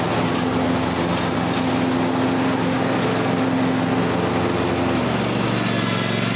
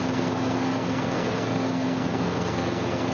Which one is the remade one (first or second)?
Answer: second